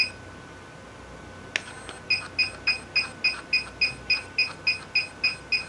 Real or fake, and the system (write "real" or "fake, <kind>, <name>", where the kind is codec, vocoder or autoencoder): real